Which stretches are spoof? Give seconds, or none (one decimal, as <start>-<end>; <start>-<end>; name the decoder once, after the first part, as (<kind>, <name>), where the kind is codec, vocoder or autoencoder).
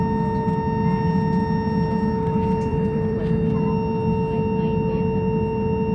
2.7-3.2 (vocoder, BigVGAN v2)